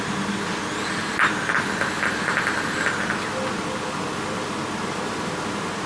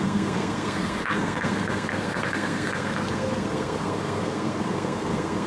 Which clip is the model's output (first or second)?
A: second